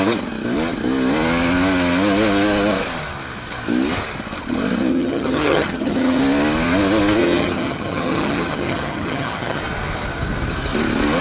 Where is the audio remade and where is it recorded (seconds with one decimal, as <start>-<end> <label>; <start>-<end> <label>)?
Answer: 0.0-4.9 recorded; 4.9-6.2 remade; 6.2-7.2 recorded; 7.2-9.6 remade; 9.6-11.2 recorded